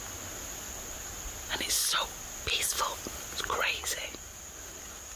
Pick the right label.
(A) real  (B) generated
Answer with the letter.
A